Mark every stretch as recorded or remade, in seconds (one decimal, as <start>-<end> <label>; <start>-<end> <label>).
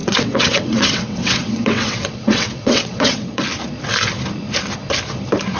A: 0.0-3.4 remade; 3.4-5.6 recorded